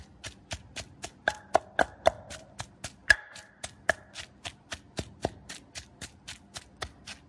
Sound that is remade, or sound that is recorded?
recorded